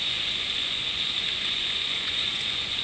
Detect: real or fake fake